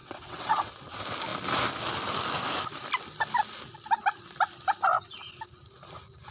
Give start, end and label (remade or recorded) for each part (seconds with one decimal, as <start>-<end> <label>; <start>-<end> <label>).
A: 0.0-0.8 remade; 0.8-6.3 recorded